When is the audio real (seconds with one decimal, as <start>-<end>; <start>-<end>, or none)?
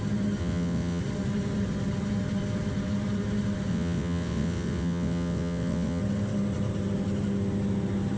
0.0-0.4; 1.0-3.7; 6.0-8.2